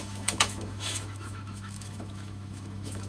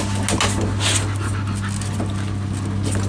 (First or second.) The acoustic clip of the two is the second